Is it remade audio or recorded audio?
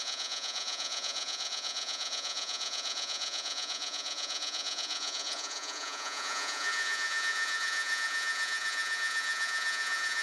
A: remade